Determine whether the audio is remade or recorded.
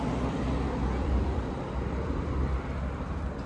recorded